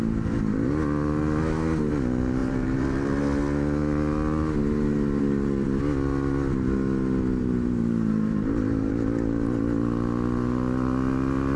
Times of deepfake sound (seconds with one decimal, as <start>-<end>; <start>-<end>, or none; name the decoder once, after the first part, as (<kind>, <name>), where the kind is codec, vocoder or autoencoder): 2.4-3.2 (vocoder, BigVGAN v2); 7.4-8.9